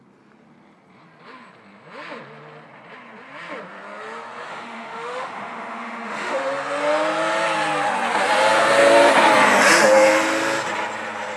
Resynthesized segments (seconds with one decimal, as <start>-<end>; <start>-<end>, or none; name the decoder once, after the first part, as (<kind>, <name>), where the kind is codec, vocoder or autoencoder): 4.5-6.4 (autoencoder, DAC-VAE)